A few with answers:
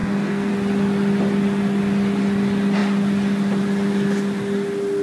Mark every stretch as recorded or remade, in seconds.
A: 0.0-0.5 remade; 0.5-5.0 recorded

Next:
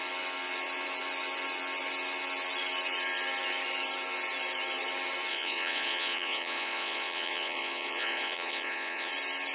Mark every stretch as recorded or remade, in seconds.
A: 0.0-5.3 recorded; 5.3-9.1 remade; 9.1-9.5 recorded

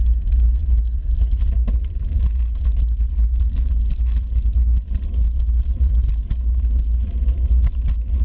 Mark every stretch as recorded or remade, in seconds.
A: 0.0-8.2 recorded